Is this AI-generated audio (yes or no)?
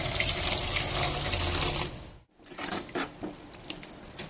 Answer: no